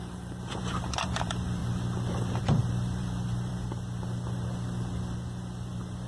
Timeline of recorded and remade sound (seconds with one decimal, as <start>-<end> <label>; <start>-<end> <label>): 0.0-0.8 recorded; 0.8-1.6 remade; 1.6-2.4 recorded; 2.4-3.5 remade; 3.5-6.1 recorded